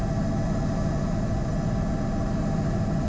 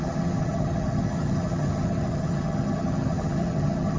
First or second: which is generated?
second